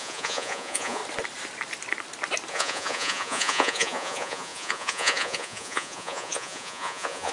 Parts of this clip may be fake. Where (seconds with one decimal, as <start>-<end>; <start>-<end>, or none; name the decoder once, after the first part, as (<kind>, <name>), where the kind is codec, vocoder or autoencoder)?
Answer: 0.0-1.0 (vocoder, Vocos); 2.5-7.3